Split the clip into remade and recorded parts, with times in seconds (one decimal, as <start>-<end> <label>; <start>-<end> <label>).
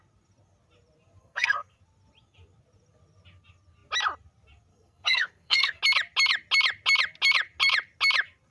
0.0-1.2 recorded; 1.2-1.8 remade; 1.8-4.7 recorded; 4.7-5.8 remade; 5.8-8.5 recorded